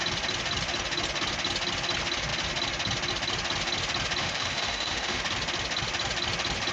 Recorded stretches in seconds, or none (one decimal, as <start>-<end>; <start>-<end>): 0.0-4.2; 5.2-6.7